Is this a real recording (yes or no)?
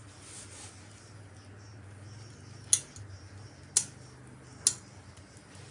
yes